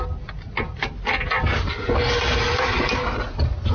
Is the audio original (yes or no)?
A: yes